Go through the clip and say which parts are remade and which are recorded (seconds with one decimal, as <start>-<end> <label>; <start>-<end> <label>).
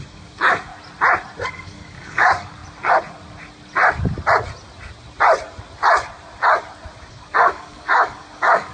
0.0-0.7 remade; 0.7-1.5 recorded; 1.5-2.6 remade; 2.6-7.1 recorded; 7.1-8.7 remade